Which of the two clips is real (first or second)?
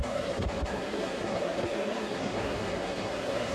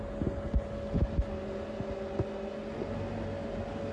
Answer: second